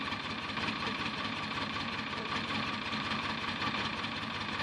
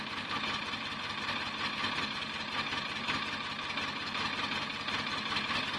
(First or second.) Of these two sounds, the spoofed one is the first